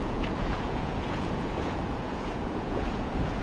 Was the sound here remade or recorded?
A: remade